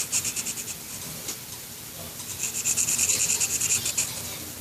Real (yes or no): yes